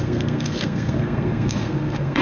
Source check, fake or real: fake